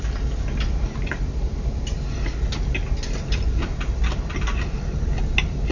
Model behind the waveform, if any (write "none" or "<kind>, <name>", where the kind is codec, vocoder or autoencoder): none